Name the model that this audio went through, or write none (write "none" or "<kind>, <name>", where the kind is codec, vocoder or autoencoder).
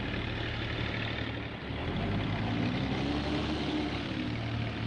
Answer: none